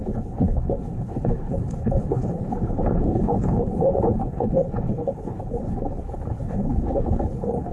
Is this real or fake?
fake